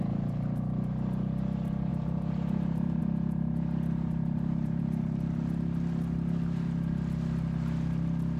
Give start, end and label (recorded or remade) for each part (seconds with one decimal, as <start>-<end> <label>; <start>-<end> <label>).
0.0-1.9 recorded; 1.9-3.0 remade; 3.0-4.1 recorded; 4.1-4.8 remade; 4.8-8.4 recorded